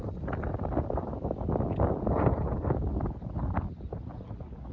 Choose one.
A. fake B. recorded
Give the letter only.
B